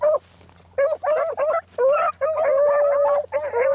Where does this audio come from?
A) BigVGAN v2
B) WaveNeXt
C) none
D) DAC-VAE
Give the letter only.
C